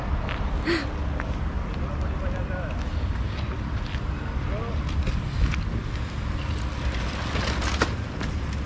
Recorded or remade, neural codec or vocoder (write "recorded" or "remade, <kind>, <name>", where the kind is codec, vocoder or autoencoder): recorded